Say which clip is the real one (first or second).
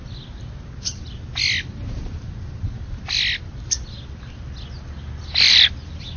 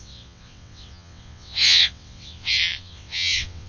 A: first